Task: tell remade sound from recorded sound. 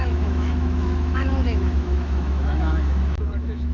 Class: remade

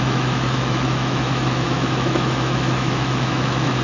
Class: remade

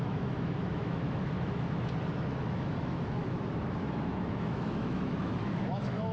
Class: remade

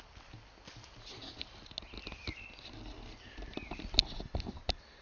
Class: recorded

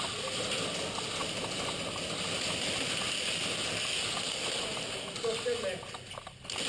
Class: recorded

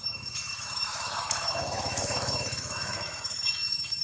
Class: remade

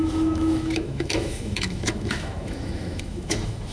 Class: remade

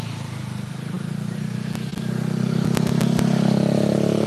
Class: recorded